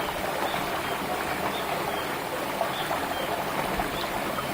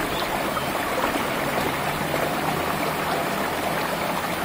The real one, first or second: first